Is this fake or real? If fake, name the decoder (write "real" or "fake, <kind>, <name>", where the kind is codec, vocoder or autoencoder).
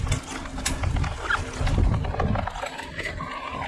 real